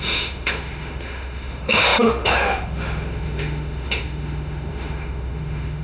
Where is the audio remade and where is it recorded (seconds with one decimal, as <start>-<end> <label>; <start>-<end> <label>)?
0.0-5.8 remade